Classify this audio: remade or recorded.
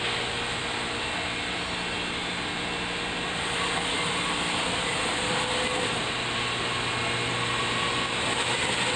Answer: recorded